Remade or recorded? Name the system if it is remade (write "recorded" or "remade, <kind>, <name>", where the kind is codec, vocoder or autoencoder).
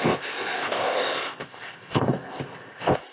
remade, codec, ZipCodec